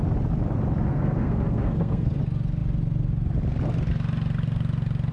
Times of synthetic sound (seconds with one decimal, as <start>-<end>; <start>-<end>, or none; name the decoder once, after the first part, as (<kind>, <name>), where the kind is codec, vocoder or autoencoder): 0.9-2.2 (codec, SNAC)